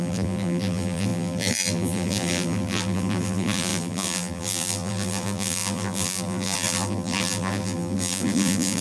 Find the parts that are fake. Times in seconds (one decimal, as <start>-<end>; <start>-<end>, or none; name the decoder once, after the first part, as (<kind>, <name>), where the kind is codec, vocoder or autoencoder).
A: 0.0-8.8 (vocoder, BigVGAN v2)